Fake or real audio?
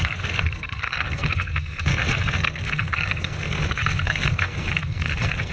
fake